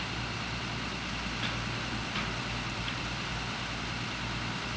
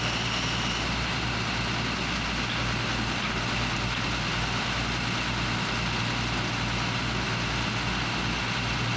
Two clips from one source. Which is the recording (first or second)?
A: second